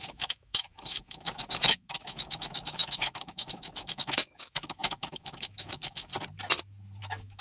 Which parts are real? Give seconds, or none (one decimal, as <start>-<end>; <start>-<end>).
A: 6.1-7.0